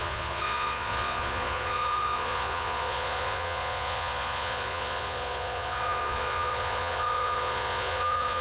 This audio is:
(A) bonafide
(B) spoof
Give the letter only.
B